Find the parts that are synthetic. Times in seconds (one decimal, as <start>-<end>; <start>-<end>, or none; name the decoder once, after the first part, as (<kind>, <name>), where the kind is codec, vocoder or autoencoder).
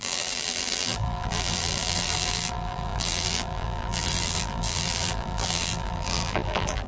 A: 0.0-6.9 (vocoder, BigVGAN v2)